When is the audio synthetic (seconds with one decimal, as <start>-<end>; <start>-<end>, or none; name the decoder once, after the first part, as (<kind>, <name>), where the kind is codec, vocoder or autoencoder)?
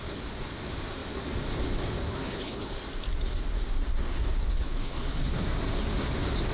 2.0-2.7 (codec, HILCodec); 4.0-5.4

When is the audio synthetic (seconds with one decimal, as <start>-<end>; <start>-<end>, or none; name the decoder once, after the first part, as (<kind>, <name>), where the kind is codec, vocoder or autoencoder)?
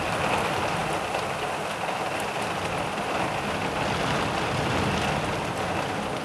none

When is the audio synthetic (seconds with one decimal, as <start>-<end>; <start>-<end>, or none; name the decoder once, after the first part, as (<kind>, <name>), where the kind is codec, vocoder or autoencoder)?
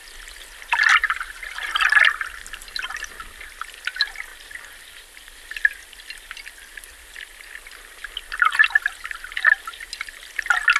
none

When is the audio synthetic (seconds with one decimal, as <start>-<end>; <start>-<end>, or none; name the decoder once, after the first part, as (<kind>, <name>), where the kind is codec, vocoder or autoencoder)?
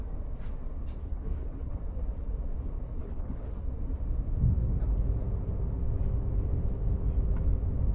1.0-1.8 (codec, HILCodec); 3.0-3.5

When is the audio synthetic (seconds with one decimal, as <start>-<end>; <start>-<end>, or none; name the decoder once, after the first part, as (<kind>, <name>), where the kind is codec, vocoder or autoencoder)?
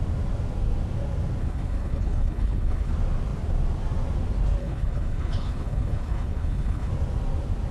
1.4-2.9 (codec, HILCodec); 4.6-6.9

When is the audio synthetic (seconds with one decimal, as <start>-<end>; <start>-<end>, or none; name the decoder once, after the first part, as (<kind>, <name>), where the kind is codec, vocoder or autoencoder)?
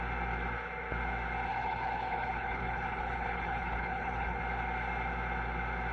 1.5-4.4 (codec, HILCodec)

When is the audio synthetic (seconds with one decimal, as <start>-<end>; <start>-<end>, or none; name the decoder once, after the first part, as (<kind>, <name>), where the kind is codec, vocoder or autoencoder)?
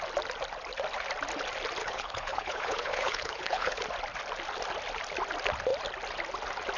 1.8-3.8 (codec, HILCodec)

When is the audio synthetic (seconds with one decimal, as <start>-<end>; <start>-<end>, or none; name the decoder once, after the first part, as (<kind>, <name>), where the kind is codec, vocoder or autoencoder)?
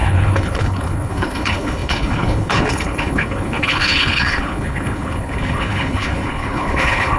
0.0-7.2 (codec, HILCodec)